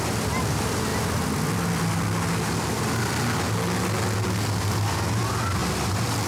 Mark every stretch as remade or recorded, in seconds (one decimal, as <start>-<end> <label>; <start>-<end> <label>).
0.0-6.3 recorded